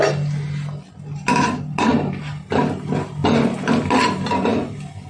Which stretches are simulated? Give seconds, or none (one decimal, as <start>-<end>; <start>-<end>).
none